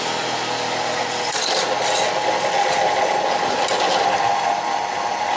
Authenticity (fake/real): real